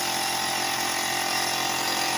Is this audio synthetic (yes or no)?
no